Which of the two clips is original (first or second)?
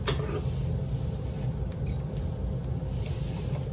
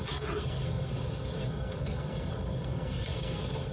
first